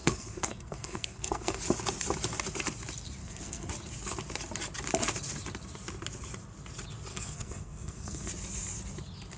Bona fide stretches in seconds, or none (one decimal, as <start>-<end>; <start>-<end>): 1.6-3.2; 3.7-7.1; 8.3-9.4

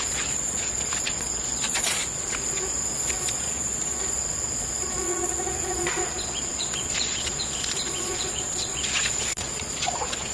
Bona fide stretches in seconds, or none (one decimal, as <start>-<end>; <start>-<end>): none

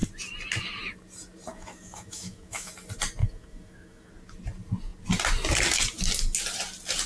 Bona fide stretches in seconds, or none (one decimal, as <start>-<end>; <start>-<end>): 0.0-1.5; 2.7-3.2; 4.1-7.1

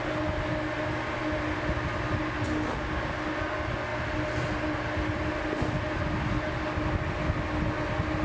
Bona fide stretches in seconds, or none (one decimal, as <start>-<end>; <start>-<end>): 0.0-8.2

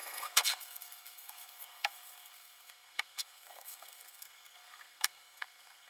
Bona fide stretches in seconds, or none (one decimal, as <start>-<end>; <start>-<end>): none

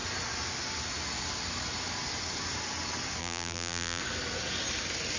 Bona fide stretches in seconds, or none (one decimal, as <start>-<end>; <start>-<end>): 0.0-3.2; 4.0-5.2

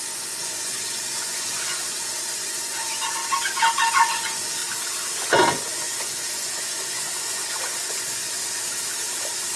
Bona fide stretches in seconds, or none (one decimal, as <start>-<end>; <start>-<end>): 3.2-3.9; 4.6-5.3; 8.4-9.6

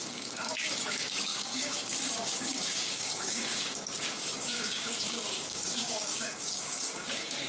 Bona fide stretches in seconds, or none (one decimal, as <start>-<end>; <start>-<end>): none